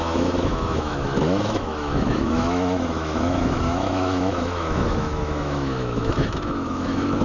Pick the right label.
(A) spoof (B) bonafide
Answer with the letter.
A